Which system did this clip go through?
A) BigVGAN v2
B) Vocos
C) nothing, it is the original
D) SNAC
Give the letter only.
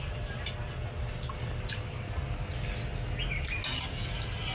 C